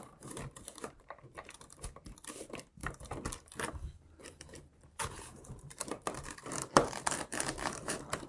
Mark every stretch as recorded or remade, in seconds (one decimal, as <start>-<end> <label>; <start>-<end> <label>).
0.0-2.8 remade; 2.8-3.7 recorded; 3.7-8.3 remade